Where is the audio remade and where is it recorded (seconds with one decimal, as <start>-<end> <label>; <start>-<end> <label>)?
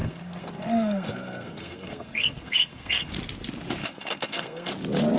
0.0-3.1 remade; 3.1-3.8 recorded; 3.8-4.7 remade; 4.7-5.2 recorded